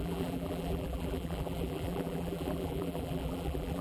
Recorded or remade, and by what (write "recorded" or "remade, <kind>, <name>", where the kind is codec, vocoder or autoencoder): remade, vocoder, BigVGAN v2